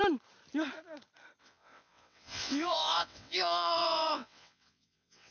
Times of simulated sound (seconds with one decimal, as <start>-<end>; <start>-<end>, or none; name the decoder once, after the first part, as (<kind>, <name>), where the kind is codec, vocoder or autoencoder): 1.4-5.3 (vocoder, WaveNeXt)